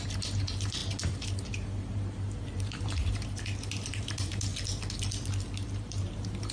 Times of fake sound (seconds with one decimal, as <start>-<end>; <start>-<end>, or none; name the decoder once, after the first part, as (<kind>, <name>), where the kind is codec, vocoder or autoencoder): 0.0-4.5 (vocoder, BigVGAN v2); 5.6-6.5